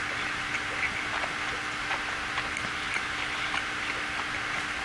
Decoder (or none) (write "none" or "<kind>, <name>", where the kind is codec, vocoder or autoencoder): none